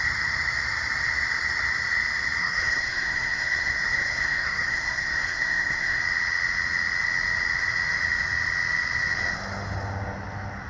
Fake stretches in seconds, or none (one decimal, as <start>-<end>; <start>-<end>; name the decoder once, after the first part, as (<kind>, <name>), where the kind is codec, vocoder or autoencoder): 2.4-6.0 (codec, SNAC)